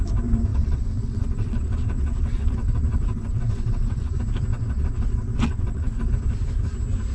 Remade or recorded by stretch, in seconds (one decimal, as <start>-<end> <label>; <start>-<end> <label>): 0.0-0.5 recorded; 0.5-4.1 remade; 4.1-4.5 recorded; 4.5-6.1 remade; 6.1-7.1 recorded